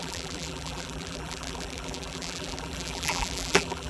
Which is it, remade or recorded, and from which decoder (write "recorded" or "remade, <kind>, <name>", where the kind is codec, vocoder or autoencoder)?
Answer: remade, vocoder, BigVGAN v2